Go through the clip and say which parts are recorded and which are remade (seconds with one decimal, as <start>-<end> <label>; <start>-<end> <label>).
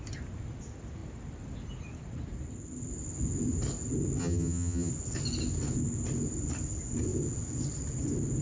0.0-4.2 recorded; 4.2-4.9 remade; 4.9-8.4 recorded